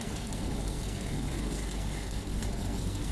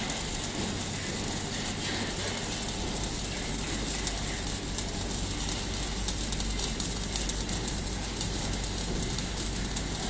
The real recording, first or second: second